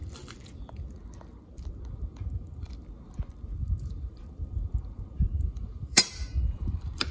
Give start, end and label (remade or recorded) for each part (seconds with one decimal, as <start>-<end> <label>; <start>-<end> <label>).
0.0-2.1 recorded; 2.1-2.7 remade; 2.7-3.6 recorded; 3.6-7.1 remade